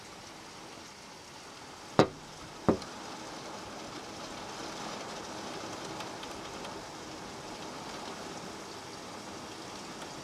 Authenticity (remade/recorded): recorded